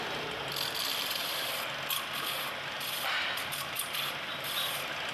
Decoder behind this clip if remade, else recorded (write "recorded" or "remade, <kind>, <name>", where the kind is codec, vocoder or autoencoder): recorded